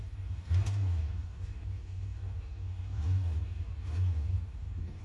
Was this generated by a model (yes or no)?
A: yes